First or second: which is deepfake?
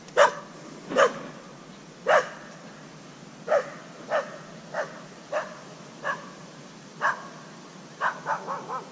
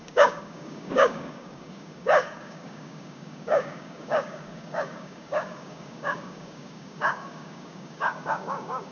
second